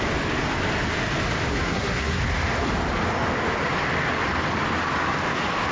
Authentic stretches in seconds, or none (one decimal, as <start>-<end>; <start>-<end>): 0.0-1.5; 2.2-5.7